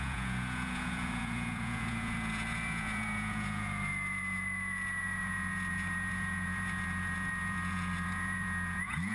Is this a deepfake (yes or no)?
yes